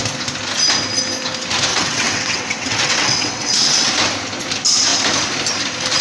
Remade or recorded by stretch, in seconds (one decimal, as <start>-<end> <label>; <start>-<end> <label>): 0.0-1.7 recorded; 1.7-3.9 remade; 3.9-6.0 recorded